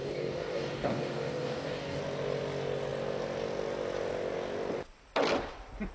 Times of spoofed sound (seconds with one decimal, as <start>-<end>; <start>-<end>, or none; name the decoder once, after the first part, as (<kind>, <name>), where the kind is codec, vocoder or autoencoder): 0.0-2.0 (codec, DAC)